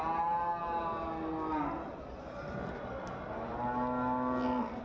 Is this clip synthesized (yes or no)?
no